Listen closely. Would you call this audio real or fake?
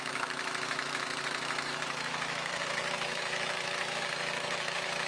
fake